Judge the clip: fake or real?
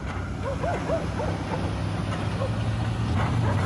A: real